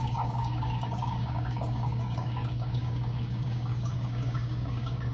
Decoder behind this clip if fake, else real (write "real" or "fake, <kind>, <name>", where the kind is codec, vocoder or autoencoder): fake, codec, DAC